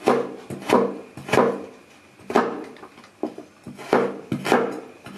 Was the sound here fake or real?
real